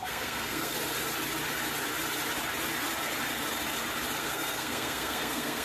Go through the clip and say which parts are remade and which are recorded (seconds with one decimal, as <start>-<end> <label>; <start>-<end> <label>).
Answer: 0.0-0.8 remade; 0.8-4.2 recorded; 4.2-5.6 remade